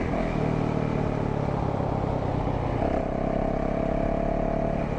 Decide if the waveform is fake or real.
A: real